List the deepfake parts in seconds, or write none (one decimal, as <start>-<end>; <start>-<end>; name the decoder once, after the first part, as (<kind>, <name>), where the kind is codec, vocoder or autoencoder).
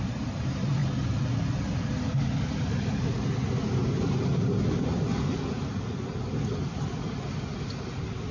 none